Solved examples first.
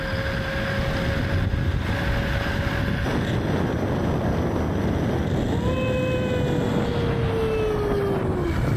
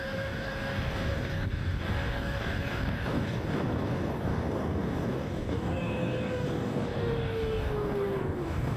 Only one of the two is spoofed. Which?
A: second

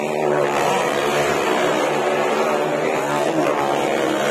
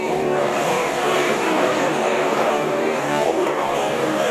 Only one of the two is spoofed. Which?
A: second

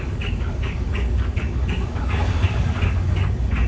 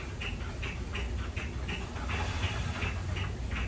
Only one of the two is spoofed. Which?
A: first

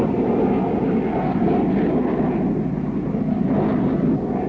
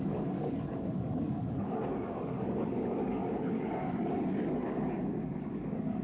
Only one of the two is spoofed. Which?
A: second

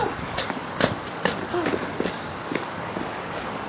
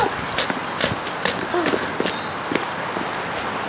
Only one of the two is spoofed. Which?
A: first